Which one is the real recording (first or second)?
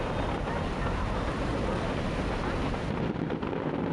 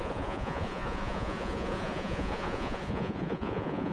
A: first